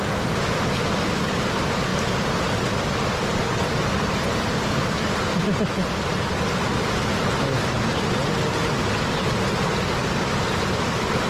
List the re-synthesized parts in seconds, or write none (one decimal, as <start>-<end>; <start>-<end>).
none